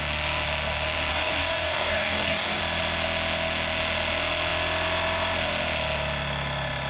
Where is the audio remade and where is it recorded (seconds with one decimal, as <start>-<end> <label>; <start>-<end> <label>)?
0.0-1.1 recorded; 1.1-2.6 remade; 2.6-6.9 recorded